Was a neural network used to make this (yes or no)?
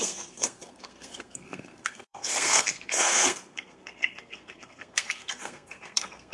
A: yes